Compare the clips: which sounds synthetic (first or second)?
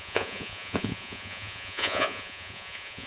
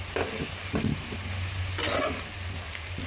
first